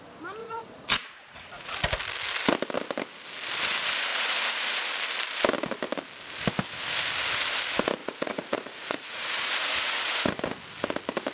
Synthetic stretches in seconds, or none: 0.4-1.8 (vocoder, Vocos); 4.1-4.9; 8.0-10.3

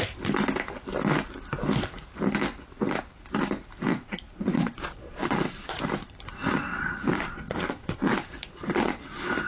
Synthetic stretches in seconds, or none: 3.9-5.7 (vocoder, Vocos); 6.7-9.0